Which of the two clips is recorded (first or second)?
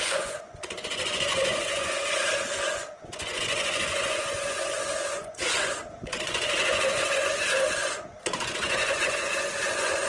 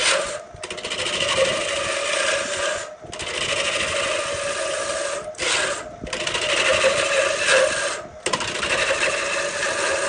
second